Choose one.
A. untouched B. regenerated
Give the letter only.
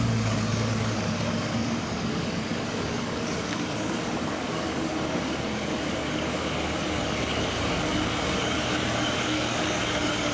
B